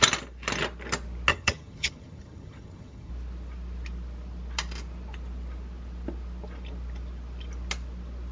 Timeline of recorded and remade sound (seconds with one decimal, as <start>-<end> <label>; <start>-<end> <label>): 0.0-1.3 recorded; 1.3-3.1 remade; 3.1-8.3 recorded

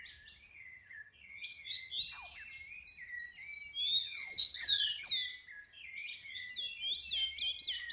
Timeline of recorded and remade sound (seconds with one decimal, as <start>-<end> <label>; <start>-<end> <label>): 0.0-0.5 recorded; 0.5-1.9 remade; 1.9-4.0 recorded; 4.0-5.1 remade; 5.1-5.7 recorded; 5.7-6.5 remade; 6.5-7.9 recorded

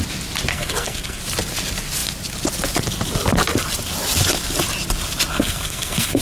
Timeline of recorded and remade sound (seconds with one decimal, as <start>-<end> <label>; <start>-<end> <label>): 0.0-0.5 recorded; 0.5-1.2 remade; 1.2-5.3 recorded; 5.3-6.2 remade

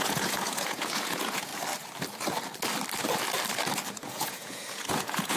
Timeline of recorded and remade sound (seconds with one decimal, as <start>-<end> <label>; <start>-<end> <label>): 0.0-1.5 remade; 1.5-3.9 recorded; 3.9-5.4 remade